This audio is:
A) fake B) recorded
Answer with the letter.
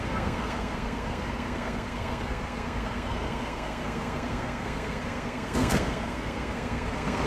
A